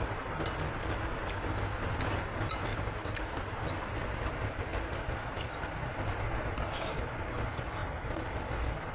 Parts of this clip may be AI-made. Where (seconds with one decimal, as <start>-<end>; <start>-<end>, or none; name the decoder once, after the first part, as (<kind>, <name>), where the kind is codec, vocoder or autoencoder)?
2.7-3.3 (vocoder, BigVGAN v2); 7.8-8.3